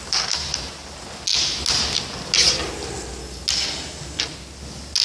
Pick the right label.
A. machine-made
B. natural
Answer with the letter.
B